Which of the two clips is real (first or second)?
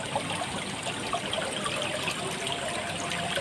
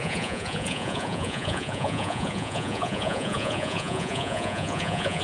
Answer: first